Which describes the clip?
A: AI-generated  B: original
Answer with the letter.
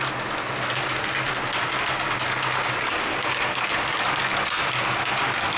B